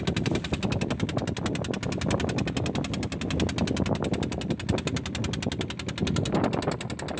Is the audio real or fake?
real